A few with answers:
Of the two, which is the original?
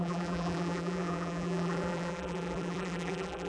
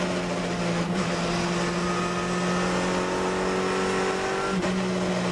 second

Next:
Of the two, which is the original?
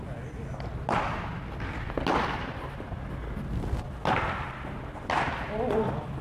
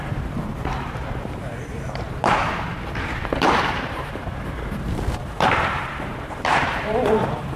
first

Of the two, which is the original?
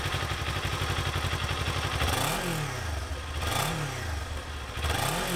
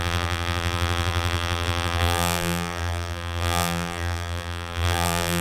first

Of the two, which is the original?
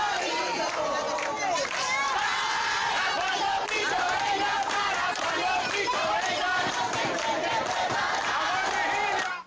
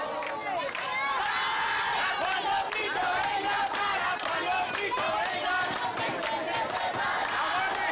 second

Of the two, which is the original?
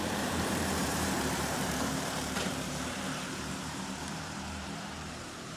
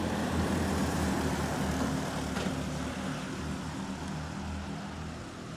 second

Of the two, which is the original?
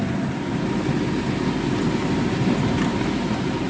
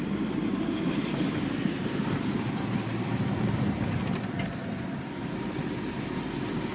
first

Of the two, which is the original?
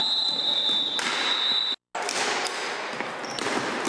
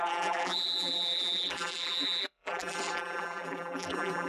first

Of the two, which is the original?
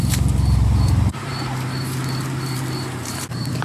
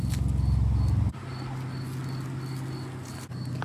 second